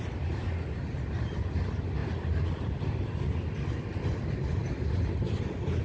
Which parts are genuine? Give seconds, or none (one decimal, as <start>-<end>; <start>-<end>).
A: 0.0-5.8